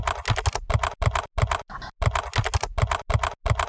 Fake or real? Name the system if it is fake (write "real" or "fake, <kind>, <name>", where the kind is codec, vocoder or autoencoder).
real